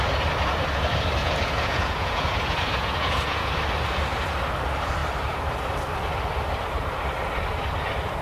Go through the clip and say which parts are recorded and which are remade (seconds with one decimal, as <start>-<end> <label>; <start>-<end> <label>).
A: 0.0-1.2 recorded; 1.2-3.5 remade; 3.5-8.2 recorded

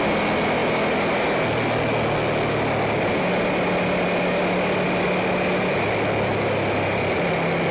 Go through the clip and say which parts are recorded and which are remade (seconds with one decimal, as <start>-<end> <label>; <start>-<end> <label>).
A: 0.0-7.7 recorded

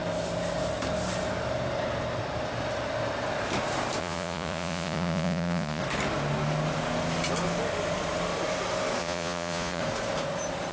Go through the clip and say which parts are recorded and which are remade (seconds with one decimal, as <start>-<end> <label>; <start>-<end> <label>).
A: 0.0-4.0 recorded; 4.0-5.8 remade; 5.8-9.0 recorded; 9.0-9.8 remade; 9.8-10.7 recorded

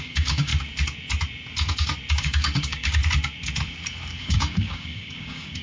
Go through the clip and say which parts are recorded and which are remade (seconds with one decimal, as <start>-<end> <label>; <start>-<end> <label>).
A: 0.0-0.5 remade; 0.5-2.1 recorded; 2.1-3.0 remade; 3.0-4.2 recorded; 4.2-5.6 remade

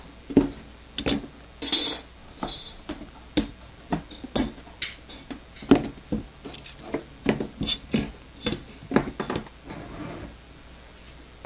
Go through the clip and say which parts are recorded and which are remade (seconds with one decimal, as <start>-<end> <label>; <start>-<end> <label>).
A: 0.0-2.2 recorded; 2.2-3.0 remade; 3.0-11.5 recorded

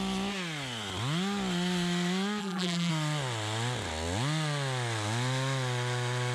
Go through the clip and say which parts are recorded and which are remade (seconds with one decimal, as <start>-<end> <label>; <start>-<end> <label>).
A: 0.0-2.4 recorded; 2.4-2.9 remade; 2.9-6.3 recorded